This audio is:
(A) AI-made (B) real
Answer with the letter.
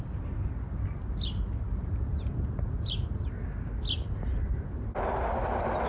B